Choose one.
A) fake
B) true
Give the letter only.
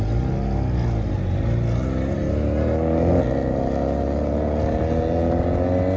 B